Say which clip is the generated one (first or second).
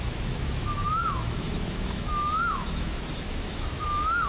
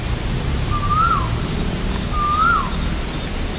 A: first